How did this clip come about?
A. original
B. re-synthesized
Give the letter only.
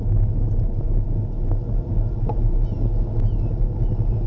A